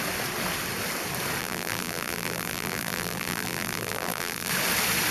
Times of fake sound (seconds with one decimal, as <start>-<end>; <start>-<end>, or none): 1.4-4.5